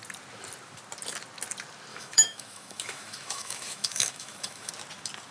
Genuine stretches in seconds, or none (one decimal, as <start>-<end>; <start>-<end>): 0.0-1.9; 4.7-5.3